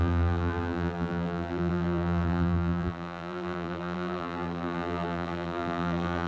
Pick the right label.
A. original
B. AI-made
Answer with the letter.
B